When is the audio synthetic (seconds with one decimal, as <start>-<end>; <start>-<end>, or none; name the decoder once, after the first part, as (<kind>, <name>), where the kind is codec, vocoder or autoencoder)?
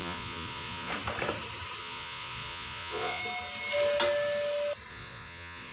0.0-0.9 (vocoder, Vocos); 1.8-3.2; 4.9-5.7